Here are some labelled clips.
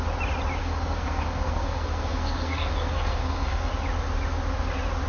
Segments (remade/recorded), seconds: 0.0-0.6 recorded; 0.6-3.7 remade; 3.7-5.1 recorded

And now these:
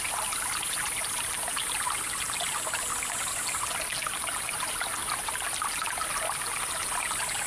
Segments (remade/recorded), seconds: 0.0-7.5 recorded